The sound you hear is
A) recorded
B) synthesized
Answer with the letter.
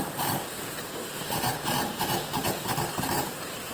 A